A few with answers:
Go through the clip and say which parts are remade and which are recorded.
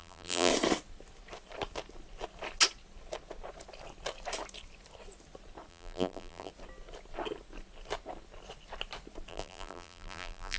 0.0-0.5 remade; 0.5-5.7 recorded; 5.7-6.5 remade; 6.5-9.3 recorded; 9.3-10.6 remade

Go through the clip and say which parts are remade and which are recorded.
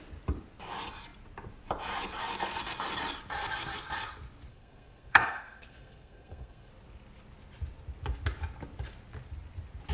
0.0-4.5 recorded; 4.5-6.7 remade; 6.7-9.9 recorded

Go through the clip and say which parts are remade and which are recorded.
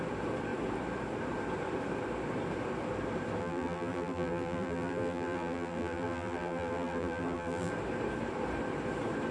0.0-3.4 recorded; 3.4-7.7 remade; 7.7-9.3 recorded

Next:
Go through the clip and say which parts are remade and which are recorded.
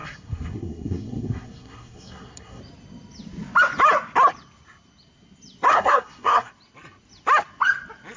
0.0-2.6 remade; 2.6-5.7 recorded; 5.7-6.5 remade; 6.5-8.2 recorded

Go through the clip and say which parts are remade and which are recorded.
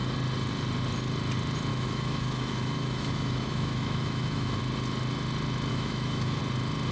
0.0-1.7 recorded; 1.7-4.6 remade; 4.6-5.7 recorded; 5.7-6.4 remade; 6.4-6.9 recorded